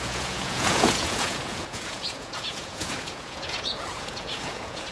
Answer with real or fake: fake